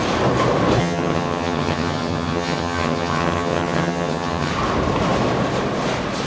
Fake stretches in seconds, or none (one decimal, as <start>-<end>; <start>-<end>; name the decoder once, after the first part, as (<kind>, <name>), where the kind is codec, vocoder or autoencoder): 0.8-4.5 (vocoder, HiFi-GAN)